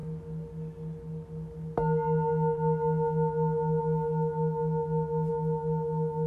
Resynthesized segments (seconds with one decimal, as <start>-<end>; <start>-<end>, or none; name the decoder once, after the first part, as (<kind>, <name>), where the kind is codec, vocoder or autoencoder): none